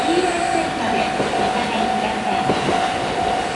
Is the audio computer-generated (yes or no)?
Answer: no